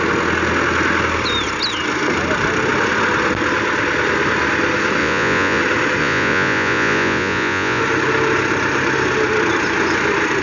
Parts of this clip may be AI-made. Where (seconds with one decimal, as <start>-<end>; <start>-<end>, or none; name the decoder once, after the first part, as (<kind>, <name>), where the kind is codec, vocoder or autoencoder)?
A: 5.0-5.6 (vocoder, Vocos); 6.0-7.8